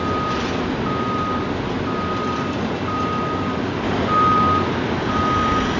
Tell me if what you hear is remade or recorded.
recorded